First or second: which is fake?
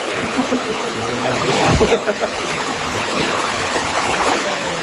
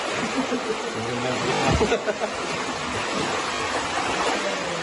first